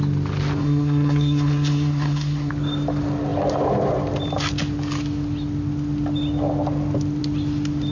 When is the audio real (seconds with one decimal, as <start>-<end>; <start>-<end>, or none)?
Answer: 0.0-0.6; 2.5-7.9